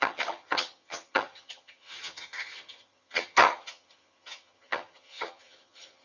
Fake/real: fake